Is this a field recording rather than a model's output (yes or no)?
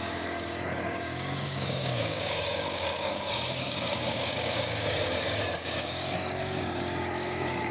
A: no